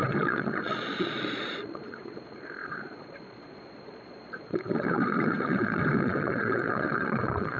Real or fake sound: fake